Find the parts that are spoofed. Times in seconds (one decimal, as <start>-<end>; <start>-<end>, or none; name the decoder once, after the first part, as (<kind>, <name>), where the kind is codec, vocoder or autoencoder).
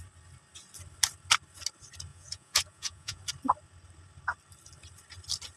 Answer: 2.1-3.2 (vocoder, Vocos)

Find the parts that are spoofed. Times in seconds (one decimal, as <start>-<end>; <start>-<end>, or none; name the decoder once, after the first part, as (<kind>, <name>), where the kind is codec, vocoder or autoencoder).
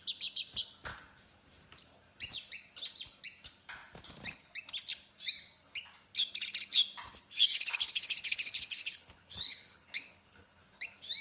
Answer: 7.5-10.6 (codec, HILCodec)